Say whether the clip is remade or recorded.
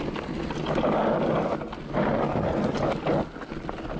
recorded